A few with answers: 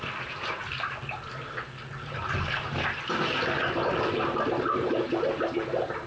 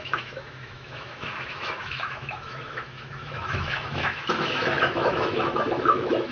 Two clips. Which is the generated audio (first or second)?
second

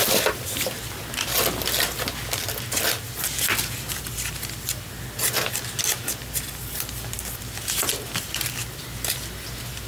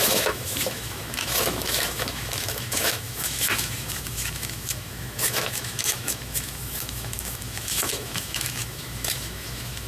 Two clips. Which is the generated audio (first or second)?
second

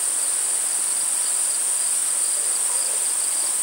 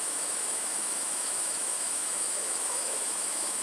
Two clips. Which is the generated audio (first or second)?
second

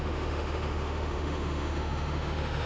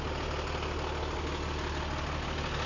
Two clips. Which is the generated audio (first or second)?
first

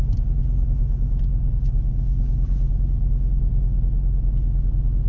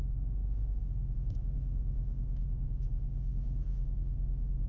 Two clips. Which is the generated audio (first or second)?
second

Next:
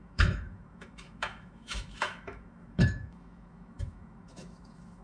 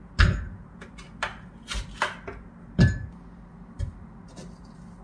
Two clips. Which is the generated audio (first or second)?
first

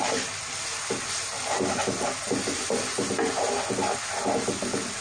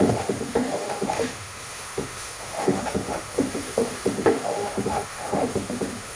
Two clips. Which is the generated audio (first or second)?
second